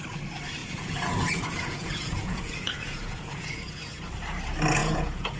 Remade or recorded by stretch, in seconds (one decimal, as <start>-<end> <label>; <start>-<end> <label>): 0.0-0.6 recorded; 0.6-3.8 remade; 3.8-4.8 recorded; 4.8-5.4 remade